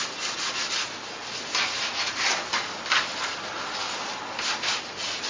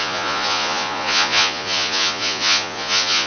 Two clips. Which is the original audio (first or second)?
first